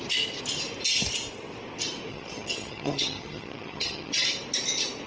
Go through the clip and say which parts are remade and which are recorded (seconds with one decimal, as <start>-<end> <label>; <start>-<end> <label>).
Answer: 0.0-2.1 recorded; 2.1-4.1 remade; 4.1-5.1 recorded